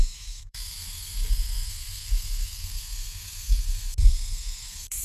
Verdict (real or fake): fake